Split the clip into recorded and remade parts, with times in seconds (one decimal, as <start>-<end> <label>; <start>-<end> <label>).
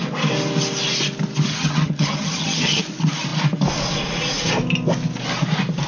0.0-1.5 recorded; 1.5-2.8 remade; 2.8-5.9 recorded